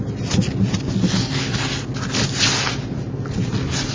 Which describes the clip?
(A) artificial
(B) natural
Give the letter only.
B